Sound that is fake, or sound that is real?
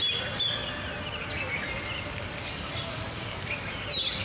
real